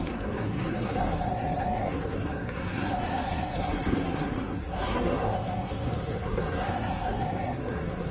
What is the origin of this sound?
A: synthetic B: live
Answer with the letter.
A